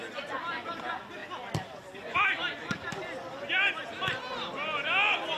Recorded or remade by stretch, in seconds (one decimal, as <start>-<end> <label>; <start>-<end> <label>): 0.0-5.4 recorded